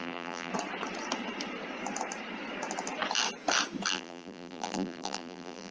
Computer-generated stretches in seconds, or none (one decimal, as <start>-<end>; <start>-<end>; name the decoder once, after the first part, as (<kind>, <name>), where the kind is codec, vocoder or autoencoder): 0.0-0.5 (vocoder, BigVGAN v2); 3.9-5.7